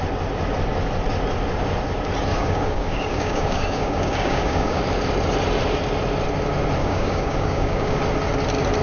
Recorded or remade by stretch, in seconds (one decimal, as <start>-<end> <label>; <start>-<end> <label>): 0.0-2.3 recorded; 2.3-4.8 remade; 4.8-6.8 recorded; 6.8-8.0 remade; 8.0-8.8 recorded